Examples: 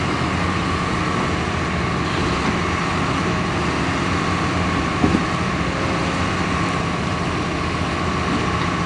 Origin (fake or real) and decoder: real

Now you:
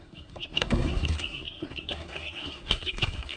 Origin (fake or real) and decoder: fake, codec, SNAC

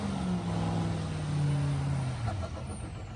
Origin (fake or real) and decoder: real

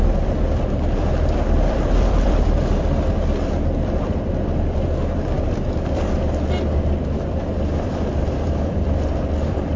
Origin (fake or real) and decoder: fake, vocoder, BigVGAN v2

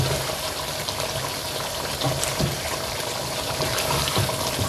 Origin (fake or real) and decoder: real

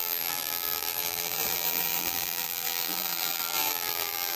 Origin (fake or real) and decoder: fake, vocoder, BigVGAN v2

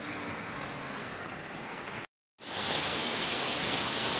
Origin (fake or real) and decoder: fake, codec, SNAC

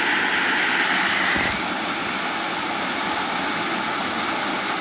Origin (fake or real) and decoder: real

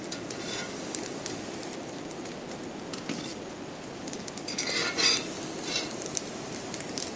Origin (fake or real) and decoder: fake, vocoder, BigVGAN v2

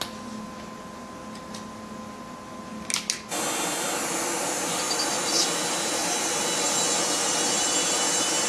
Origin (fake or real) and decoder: real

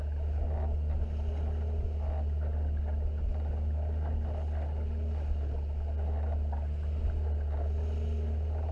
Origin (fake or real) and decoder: real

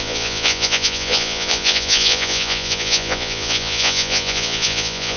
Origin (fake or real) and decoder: fake, vocoder, Vocos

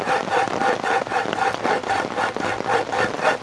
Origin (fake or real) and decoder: real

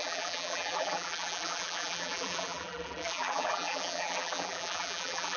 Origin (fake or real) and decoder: fake, vocoder, BigVGAN v2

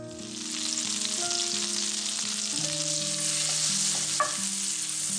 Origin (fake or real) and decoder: real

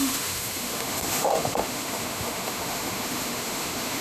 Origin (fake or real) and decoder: fake, autoencoder, DAC-VAE